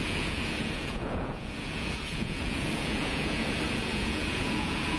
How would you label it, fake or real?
fake